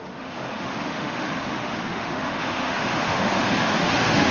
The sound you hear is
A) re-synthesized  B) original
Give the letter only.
A